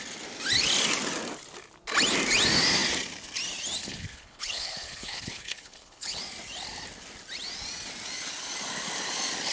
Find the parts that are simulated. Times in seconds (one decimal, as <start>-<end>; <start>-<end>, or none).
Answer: 3.8-6.2